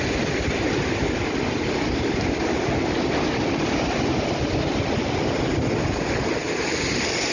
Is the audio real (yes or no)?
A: yes